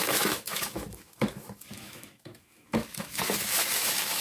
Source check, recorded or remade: remade